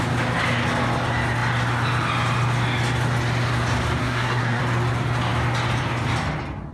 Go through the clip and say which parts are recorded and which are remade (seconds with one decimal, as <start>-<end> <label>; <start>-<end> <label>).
0.0-4.0 recorded; 4.0-4.6 remade; 4.6-6.7 recorded